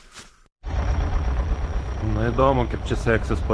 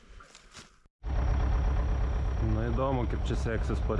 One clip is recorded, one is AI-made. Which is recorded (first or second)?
second